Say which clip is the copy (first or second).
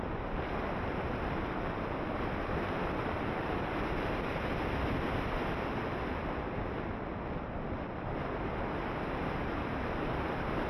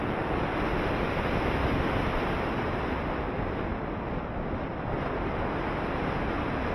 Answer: first